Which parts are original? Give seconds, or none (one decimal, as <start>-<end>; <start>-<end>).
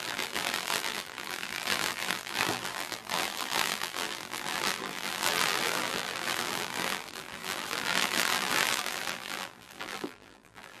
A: none